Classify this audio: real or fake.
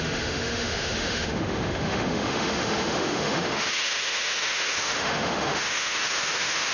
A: fake